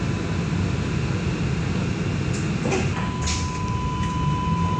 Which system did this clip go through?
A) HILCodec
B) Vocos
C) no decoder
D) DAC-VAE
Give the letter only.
C